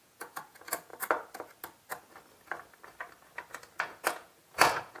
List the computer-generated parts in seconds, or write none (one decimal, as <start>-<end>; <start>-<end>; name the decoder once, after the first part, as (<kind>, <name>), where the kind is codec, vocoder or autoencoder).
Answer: 0.0-0.9 (vocoder, Vocos); 3.8-5.0